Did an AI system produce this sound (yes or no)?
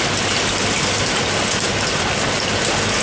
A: no